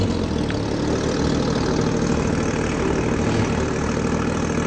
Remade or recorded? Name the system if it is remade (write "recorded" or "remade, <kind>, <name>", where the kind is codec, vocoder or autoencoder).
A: recorded